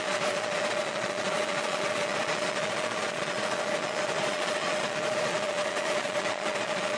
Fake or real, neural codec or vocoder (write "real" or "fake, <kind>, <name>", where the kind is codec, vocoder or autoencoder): fake, vocoder, Vocos